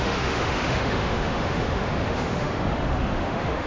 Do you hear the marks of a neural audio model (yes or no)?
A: yes